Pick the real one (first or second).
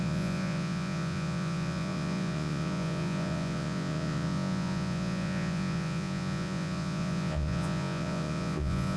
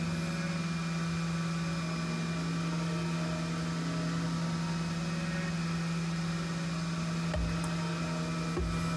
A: second